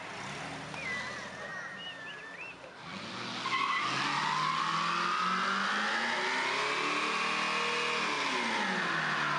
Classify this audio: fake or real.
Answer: real